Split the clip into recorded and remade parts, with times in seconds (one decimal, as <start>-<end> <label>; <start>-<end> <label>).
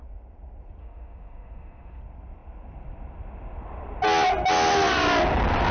0.0-0.8 recorded; 0.8-2.0 remade; 2.0-5.7 recorded